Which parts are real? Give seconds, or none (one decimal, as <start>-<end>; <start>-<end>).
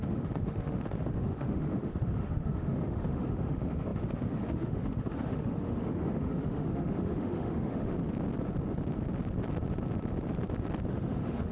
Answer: 7.9-10.9